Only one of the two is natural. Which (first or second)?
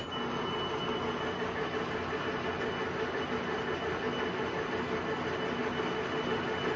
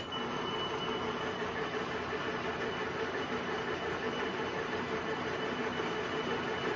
first